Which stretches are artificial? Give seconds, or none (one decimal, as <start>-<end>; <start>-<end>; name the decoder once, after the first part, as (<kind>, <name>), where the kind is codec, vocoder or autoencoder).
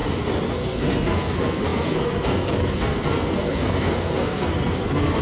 0.5-5.2 (codec, SNAC)